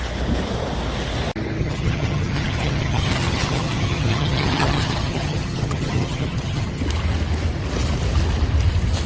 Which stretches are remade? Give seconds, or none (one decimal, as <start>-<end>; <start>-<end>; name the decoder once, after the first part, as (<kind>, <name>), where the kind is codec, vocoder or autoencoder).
1.6-6.8 (vocoder, HiFi-GAN)